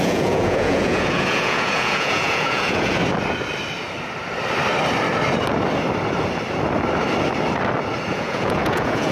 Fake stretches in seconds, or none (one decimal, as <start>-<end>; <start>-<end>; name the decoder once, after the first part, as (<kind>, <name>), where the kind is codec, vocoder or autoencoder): 0.0-3.0 (vocoder, Vocos); 8.1-9.1